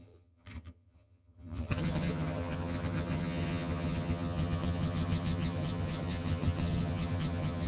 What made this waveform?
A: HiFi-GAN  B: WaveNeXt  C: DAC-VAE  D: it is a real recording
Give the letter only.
A